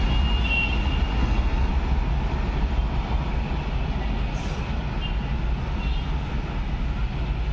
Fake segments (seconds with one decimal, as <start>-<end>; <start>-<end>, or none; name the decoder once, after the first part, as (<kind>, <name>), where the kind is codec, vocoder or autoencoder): 1.2-1.7 (codec, SNAC)